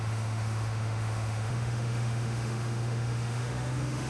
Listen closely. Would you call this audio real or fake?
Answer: fake